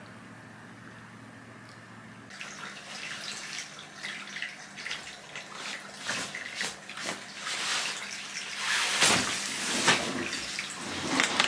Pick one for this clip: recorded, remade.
recorded